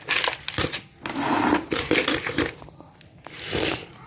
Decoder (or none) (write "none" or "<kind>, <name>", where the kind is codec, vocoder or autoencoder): none